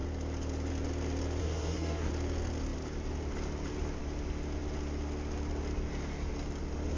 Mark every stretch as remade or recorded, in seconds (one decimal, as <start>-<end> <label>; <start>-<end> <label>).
0.0-1.4 recorded; 1.4-2.1 remade; 2.1-7.0 recorded